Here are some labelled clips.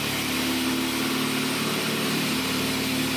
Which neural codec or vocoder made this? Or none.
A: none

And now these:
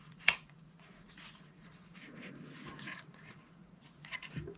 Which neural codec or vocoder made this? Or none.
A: vocoder, Vocos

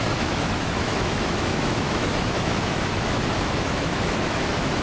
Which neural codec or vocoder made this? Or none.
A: autoencoder, DAC-VAE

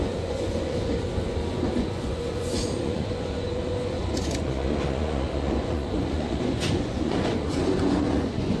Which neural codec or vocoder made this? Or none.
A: vocoder, Vocos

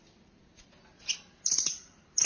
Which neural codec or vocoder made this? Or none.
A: none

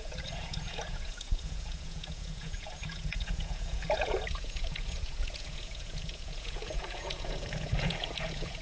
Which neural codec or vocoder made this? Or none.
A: vocoder, Vocos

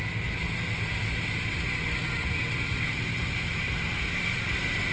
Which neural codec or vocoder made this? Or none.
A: none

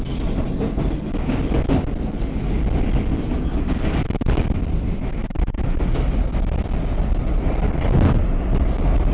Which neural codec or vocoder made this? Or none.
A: none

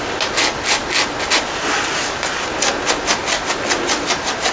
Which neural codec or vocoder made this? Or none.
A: none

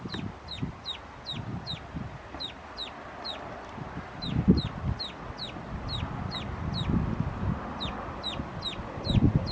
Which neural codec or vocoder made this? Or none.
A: none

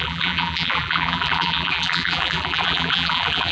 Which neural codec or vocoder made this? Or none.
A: vocoder, BigVGAN v2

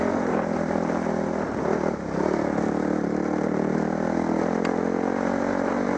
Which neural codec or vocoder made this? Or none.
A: none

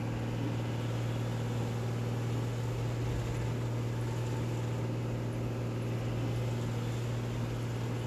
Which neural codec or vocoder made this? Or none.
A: none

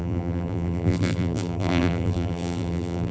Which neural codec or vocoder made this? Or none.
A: vocoder, BigVGAN v2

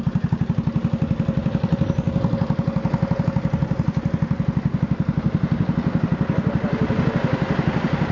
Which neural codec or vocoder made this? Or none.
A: none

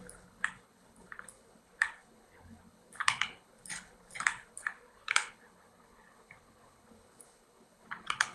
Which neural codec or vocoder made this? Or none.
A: codec, HILCodec